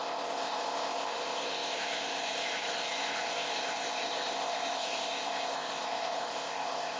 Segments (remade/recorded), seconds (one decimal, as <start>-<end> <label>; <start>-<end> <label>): 0.0-7.0 remade